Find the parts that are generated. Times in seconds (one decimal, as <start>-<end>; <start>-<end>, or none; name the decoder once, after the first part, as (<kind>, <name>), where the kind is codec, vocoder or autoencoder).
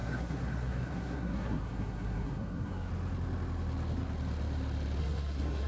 0.0-2.9 (codec, SNAC); 5.0-5.7